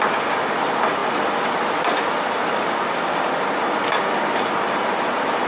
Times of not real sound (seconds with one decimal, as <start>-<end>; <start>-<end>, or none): none

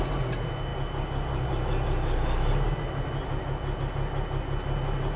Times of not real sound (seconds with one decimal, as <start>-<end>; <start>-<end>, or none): none

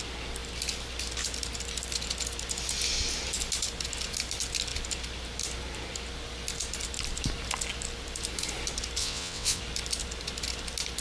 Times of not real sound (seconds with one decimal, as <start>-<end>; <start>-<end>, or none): 9.0-9.6

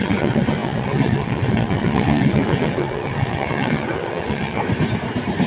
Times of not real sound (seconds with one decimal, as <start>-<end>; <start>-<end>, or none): 0.0-4.6

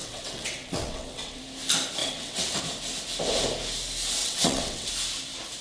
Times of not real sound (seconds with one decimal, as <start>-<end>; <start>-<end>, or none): 0.0-1.4; 2.0-2.6; 4.2-4.9

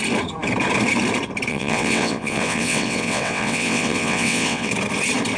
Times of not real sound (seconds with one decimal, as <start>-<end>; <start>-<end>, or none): 1.5-4.7

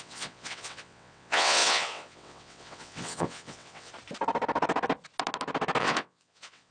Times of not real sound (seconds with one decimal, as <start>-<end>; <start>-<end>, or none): 0.0-3.9; 5.8-6.7

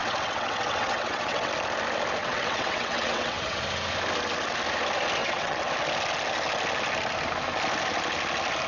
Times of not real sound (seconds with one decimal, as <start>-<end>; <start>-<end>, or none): 0.0-1.5; 2.2-3.6; 5.2-5.7